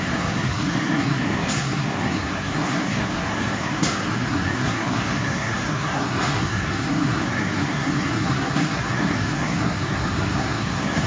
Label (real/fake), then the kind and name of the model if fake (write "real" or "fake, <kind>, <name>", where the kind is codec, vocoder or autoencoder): fake, codec, SNAC